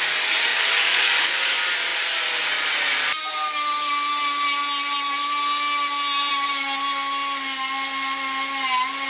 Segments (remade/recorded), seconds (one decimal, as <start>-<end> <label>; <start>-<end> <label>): 0.0-0.5 recorded; 0.5-1.4 remade; 1.4-9.1 recorded